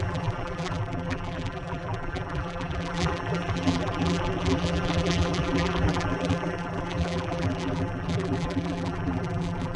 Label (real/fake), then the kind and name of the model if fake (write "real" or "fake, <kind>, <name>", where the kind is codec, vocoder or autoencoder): fake, vocoder, BigVGAN v2